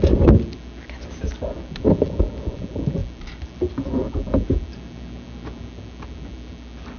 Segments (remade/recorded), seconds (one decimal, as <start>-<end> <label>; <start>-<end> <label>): 0.0-7.0 recorded